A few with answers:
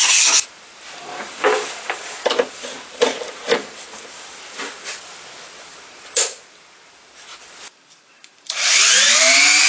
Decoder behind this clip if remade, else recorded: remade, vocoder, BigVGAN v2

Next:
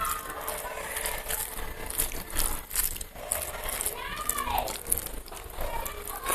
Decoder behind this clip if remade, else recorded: recorded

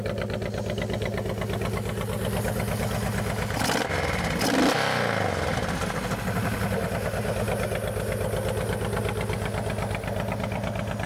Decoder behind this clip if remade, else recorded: recorded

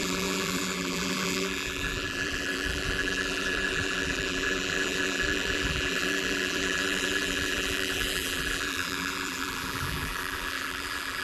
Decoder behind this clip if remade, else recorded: remade, vocoder, BigVGAN v2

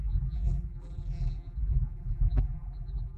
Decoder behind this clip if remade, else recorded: remade, vocoder, BigVGAN v2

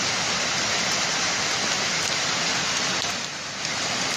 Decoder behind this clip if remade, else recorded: recorded